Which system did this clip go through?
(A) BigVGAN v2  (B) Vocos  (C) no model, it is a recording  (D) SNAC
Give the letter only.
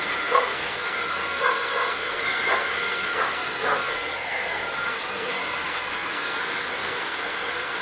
D